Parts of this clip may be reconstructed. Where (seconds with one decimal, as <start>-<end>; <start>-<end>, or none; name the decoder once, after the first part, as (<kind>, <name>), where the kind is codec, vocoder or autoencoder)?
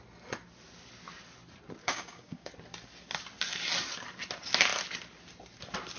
1.8-2.5 (codec, DAC)